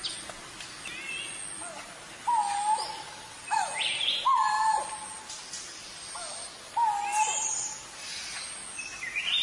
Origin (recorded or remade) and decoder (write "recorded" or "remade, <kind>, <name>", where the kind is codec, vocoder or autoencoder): recorded